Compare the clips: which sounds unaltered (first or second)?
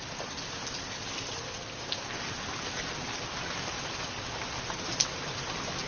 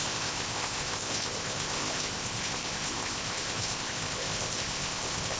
first